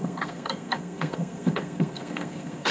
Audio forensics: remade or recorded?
remade